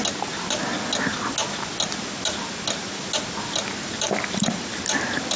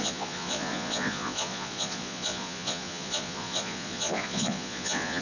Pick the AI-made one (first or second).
second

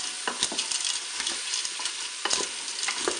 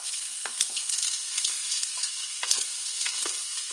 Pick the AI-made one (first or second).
second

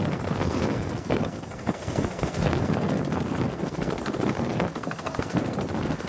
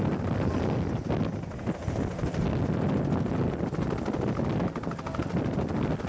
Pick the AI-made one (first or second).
first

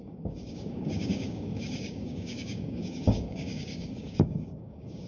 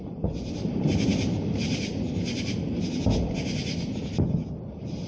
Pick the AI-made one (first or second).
first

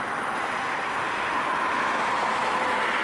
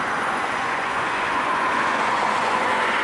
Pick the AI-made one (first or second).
second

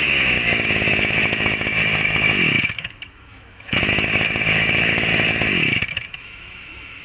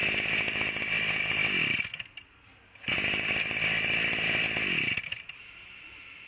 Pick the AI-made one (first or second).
first